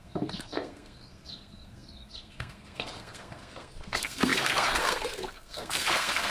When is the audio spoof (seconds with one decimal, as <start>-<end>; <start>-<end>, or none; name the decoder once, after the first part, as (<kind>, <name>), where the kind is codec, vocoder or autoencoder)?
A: 0.0-6.3 (codec, SNAC)